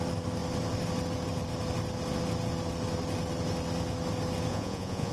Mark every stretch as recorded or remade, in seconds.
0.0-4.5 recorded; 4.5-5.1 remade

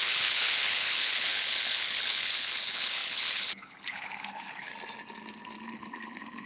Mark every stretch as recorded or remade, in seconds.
0.0-4.7 remade; 4.7-5.7 recorded; 5.7-6.5 remade

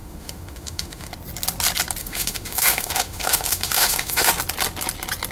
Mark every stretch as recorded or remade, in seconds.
0.0-1.1 remade; 1.1-2.0 recorded; 2.0-4.3 remade; 4.3-5.3 recorded